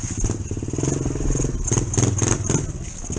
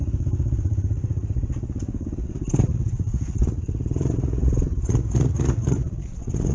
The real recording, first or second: first